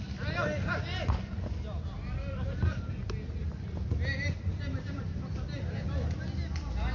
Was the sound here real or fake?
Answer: real